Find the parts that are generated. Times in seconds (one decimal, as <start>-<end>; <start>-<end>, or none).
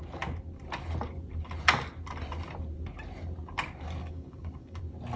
4.0-4.8